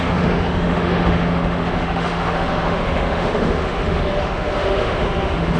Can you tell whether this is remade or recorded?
remade